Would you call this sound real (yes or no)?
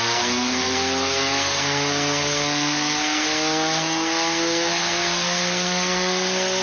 no